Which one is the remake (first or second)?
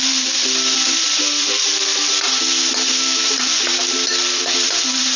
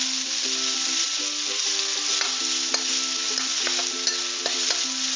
first